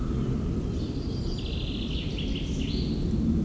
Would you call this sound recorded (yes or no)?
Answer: yes